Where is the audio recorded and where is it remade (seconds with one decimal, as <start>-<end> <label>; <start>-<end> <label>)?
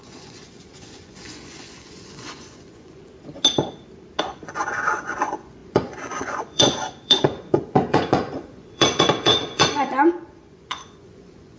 0.0-3.1 remade; 3.1-4.2 recorded; 4.2-11.6 remade